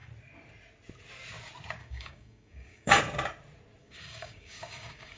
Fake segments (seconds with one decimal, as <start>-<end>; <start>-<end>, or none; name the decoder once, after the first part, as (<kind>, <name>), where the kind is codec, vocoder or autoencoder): 1.8-3.0 (codec, DAC); 3.8-5.2

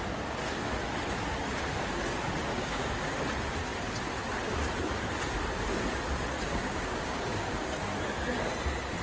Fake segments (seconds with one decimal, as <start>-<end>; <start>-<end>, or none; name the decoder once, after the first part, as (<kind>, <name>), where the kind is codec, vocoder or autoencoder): 2.5-3.2 (codec, DAC); 6.6-7.8

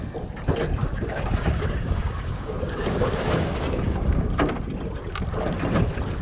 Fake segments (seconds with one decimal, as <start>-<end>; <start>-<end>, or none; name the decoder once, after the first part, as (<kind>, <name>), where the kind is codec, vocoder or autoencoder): 0.8-4.5 (codec, DAC)

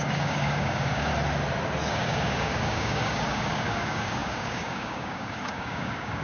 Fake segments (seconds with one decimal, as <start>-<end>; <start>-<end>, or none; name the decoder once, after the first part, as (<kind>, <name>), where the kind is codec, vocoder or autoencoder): 0.0-1.1 (codec, DAC); 1.9-6.2

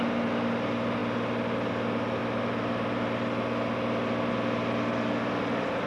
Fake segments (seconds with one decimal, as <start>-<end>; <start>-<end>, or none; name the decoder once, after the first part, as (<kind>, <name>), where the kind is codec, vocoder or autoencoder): none

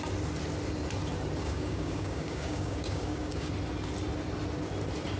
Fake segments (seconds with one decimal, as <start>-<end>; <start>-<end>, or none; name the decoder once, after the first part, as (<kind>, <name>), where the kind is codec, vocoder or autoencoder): 1.4-3.5 (codec, DAC)

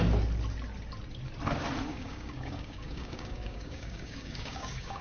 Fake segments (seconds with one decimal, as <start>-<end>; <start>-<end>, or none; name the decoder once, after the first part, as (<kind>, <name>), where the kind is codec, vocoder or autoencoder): 1.9-5.0 (codec, DAC)

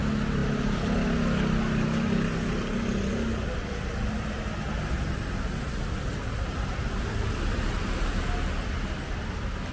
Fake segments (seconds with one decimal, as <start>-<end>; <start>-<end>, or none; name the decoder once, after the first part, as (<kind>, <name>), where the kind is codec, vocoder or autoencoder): none